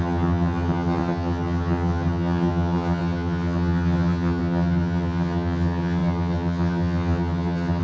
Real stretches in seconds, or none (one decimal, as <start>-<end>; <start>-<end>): none